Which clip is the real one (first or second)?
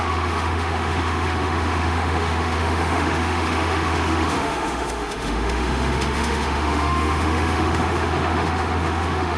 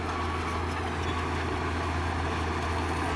second